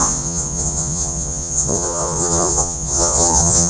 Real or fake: fake